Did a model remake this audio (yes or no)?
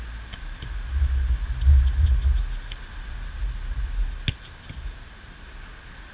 no